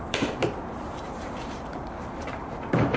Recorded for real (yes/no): no